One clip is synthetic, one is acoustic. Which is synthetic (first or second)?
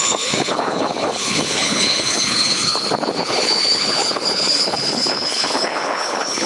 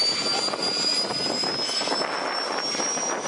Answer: first